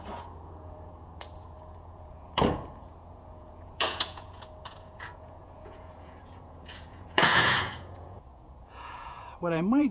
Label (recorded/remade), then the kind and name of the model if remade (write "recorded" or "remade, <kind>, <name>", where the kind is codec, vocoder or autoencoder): remade, vocoder, Vocos